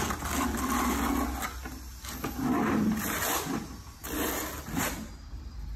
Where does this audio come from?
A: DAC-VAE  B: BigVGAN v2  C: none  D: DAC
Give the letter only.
C